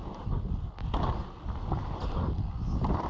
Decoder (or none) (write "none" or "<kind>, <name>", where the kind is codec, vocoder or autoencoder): none